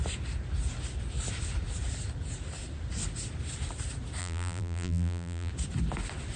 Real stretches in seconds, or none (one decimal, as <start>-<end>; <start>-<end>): 0.0-4.2; 5.5-6.4